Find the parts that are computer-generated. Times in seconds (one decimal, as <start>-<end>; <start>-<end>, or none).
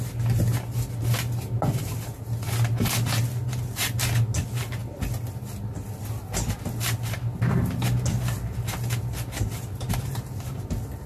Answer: none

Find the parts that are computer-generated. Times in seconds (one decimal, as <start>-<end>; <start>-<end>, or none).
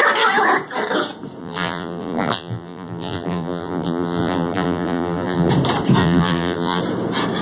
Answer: 1.4-5.5; 6.0-6.8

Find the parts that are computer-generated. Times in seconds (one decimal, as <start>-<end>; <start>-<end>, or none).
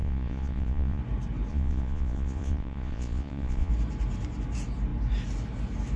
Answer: 0.0-1.0; 1.5-3.7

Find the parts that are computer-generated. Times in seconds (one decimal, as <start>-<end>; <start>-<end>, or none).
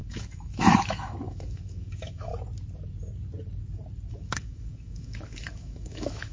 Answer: 0.0-2.3; 4.1-6.3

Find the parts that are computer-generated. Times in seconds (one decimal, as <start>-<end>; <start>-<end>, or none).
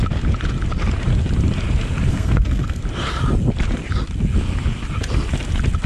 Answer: 2.1-2.8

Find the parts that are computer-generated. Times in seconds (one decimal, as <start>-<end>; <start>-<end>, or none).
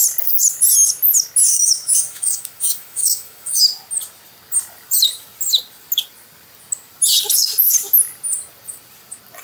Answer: 1.5-3.6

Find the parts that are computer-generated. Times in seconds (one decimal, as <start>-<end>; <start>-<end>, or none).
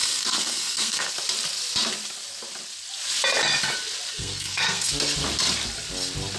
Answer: 0.0-1.1; 4.1-4.9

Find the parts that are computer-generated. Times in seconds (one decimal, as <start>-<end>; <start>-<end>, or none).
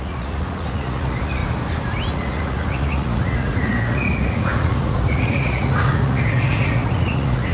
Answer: 0.0-1.4; 2.1-7.5